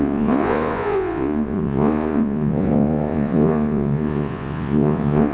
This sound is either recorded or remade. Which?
remade